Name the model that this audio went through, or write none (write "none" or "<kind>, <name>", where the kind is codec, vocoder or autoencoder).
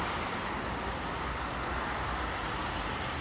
none